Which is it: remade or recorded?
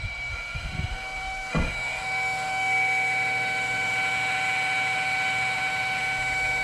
remade